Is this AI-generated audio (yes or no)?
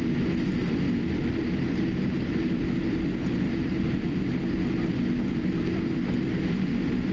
no